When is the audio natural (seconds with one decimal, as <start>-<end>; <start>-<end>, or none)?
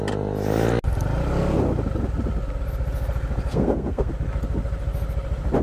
0.0-3.5; 4.1-5.6